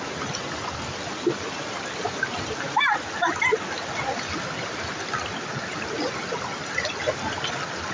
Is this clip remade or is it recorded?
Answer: recorded